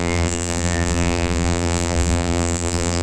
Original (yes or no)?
no